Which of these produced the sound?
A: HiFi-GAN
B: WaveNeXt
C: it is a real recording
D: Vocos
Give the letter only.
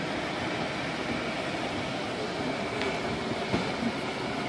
C